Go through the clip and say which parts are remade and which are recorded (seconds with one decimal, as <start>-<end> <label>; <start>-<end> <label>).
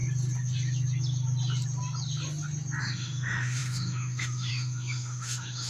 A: 0.0-2.8 recorded; 2.8-5.7 remade